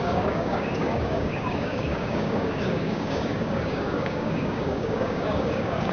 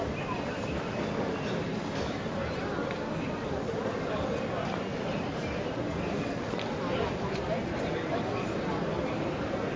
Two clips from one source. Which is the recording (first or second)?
second